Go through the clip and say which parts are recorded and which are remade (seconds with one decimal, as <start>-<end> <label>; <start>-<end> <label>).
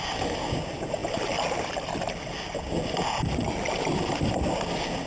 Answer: 0.0-5.1 recorded